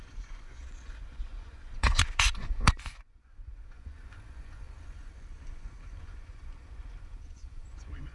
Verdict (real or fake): fake